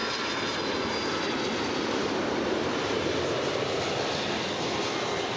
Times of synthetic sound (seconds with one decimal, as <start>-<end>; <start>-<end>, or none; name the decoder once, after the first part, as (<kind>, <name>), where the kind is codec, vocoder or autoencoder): none